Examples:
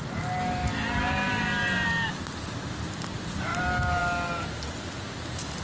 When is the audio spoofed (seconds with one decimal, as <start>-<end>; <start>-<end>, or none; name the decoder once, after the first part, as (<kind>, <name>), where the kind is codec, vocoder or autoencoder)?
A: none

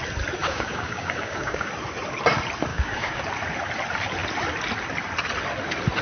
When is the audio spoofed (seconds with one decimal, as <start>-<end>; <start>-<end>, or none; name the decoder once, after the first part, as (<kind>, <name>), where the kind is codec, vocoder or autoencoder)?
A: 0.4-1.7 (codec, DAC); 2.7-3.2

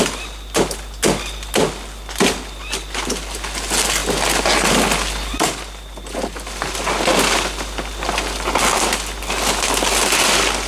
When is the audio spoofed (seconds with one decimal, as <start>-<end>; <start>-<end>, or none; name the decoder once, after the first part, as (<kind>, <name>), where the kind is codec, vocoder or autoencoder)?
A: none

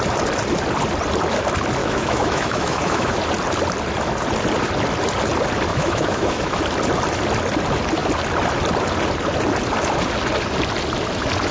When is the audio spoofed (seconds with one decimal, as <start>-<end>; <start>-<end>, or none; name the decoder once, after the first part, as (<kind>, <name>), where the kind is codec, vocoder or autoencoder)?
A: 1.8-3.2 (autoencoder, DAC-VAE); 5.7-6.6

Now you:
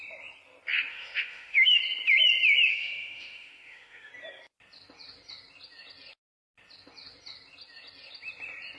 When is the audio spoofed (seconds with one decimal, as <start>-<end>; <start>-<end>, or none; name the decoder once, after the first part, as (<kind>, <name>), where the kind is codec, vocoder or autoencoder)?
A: 0.9-1.8 (autoencoder, DAC-VAE); 2.7-4.1

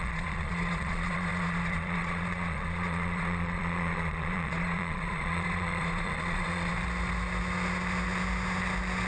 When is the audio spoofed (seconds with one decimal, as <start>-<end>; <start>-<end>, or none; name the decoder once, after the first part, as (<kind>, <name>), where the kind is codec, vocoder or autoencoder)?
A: 0.0-6.7 (vocoder, Vocos)

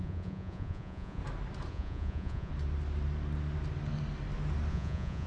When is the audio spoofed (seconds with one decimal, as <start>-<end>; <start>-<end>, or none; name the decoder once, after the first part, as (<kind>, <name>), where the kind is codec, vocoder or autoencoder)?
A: 0.0-1.2 (vocoder, Vocos); 1.7-2.5; 4.7-5.3

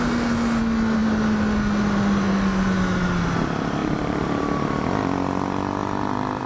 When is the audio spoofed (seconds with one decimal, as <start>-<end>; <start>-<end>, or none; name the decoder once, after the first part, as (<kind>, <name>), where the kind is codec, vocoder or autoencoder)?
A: 3.8-4.4 (vocoder, BigVGAN v2)